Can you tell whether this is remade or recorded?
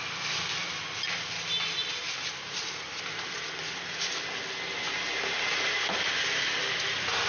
recorded